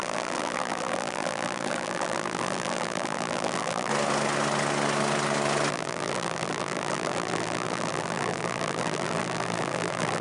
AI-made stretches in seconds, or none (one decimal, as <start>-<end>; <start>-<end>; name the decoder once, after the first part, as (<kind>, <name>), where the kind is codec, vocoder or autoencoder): 0.0-3.9 (vocoder, BigVGAN v2); 5.7-10.2